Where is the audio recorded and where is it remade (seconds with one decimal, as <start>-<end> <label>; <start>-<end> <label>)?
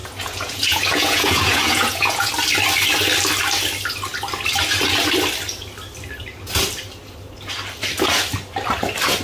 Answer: 0.0-2.3 remade; 2.3-9.2 recorded